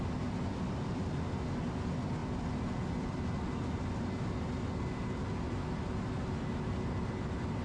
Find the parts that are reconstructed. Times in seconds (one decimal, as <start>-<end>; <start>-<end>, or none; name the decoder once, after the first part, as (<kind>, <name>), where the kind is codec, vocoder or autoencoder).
none